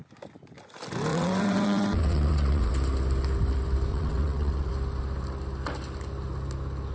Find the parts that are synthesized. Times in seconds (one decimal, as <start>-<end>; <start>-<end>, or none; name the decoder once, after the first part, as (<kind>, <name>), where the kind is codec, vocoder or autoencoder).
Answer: 1.1-2.7 (vocoder, WaveNeXt); 3.9-4.7